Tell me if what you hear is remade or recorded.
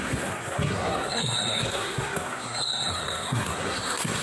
remade